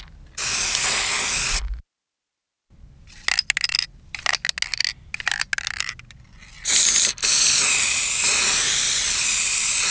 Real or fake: real